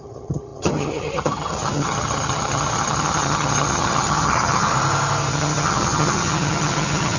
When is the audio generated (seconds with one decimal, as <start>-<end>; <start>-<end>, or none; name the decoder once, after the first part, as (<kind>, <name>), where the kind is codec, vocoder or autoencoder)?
0.0-4.7 (vocoder, HiFi-GAN); 5.3-7.2